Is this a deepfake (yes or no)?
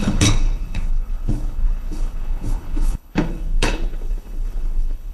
yes